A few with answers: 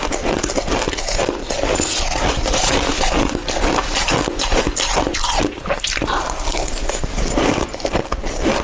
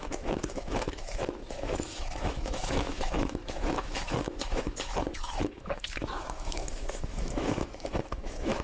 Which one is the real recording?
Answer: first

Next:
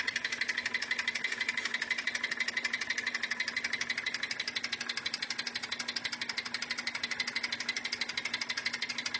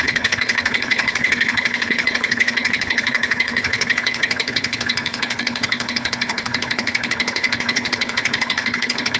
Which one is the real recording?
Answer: first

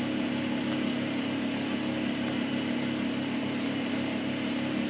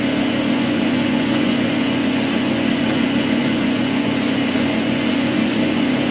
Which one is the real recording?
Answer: first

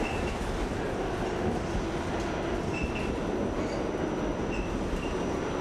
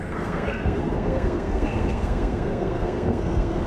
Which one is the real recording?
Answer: first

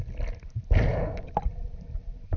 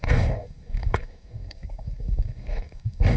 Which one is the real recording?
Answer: first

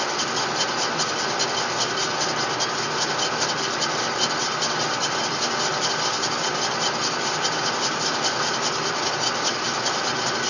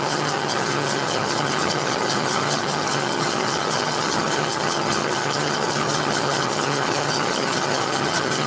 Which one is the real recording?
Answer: first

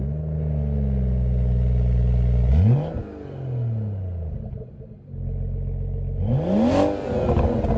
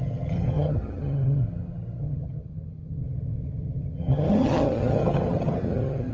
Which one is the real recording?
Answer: first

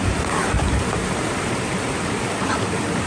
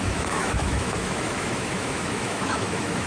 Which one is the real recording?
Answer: first